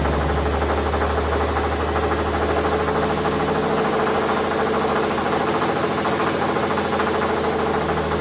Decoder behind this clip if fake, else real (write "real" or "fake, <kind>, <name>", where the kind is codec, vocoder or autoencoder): real